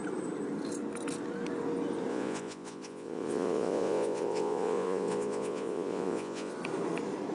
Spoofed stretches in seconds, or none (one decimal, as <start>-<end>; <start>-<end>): 2.1-6.5